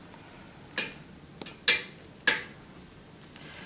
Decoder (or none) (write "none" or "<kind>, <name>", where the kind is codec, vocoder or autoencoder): none